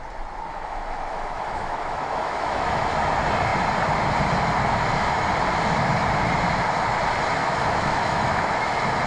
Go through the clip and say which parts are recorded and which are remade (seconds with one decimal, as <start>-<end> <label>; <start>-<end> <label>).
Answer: 0.0-0.5 recorded; 0.5-2.9 remade; 2.9-7.4 recorded; 7.4-8.7 remade; 8.7-9.1 recorded